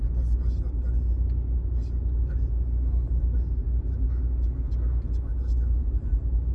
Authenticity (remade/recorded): recorded